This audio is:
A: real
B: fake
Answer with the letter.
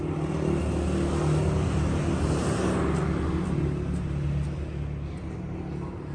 A